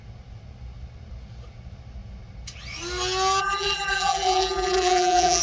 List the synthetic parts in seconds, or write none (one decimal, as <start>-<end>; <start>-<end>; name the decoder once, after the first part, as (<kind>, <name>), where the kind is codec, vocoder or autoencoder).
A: 3.4-5.4 (vocoder, BigVGAN v2)